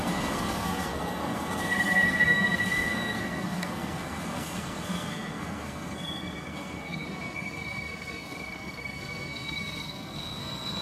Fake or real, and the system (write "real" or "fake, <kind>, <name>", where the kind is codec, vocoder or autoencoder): fake, codec, SNAC